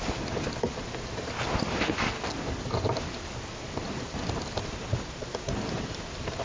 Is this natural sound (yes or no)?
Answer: yes